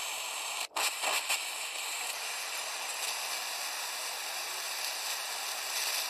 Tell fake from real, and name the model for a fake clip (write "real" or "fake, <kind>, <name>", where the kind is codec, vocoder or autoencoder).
real